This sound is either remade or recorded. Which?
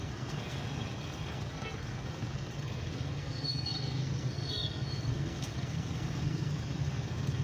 remade